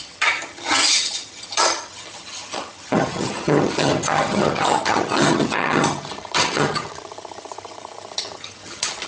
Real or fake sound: fake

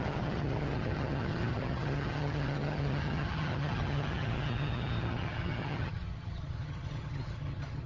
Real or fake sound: fake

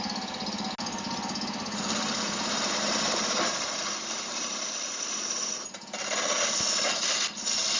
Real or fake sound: real